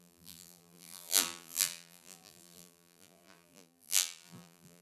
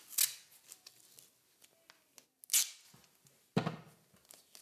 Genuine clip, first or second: second